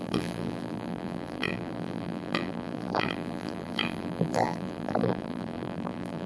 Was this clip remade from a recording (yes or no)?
yes